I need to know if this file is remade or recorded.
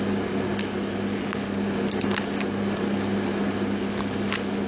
recorded